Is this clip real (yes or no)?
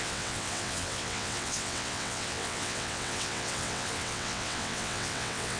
no